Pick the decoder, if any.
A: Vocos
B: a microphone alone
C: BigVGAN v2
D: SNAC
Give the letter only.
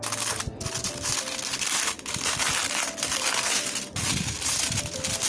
B